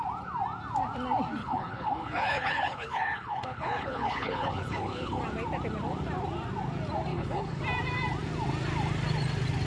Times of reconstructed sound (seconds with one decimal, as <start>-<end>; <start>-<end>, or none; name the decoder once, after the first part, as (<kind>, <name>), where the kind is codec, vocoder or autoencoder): 1.4-5.2 (codec, HILCodec); 7.1-7.6